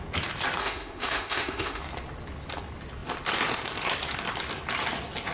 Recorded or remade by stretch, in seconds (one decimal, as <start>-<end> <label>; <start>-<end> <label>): 0.0-0.6 recorded; 0.6-1.8 remade; 1.8-5.3 recorded